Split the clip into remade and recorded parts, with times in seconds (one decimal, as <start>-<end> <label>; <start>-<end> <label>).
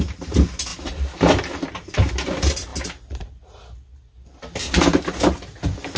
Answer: 0.0-6.0 recorded